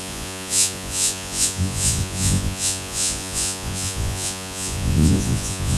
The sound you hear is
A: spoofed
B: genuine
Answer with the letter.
A